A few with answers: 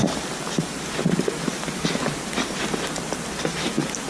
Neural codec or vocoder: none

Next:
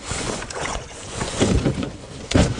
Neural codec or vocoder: vocoder, Vocos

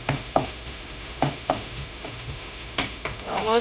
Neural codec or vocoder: autoencoder, DAC-VAE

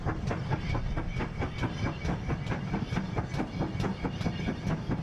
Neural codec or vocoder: none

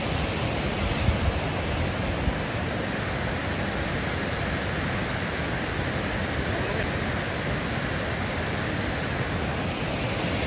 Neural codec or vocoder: none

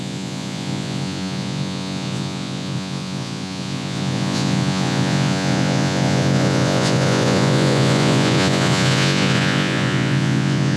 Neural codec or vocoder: vocoder, Vocos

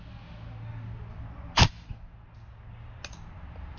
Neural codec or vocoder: none